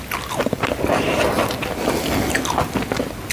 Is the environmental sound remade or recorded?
recorded